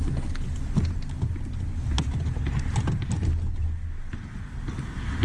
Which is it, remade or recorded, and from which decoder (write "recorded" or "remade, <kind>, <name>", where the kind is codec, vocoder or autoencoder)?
recorded